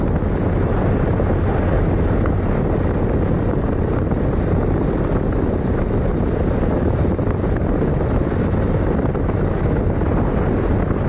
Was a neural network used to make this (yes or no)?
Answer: no